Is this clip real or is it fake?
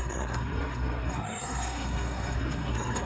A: fake